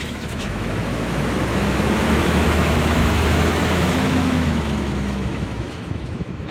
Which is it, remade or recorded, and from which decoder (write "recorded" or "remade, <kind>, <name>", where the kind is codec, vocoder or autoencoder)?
remade, autoencoder, DAC-VAE